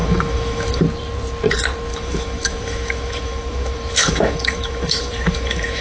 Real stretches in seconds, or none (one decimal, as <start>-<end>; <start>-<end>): 0.8-1.9